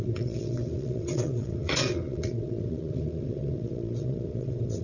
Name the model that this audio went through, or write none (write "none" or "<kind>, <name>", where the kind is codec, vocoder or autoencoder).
vocoder, WaveNeXt